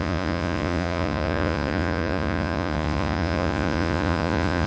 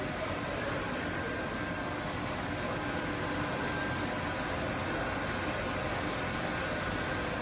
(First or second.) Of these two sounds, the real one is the second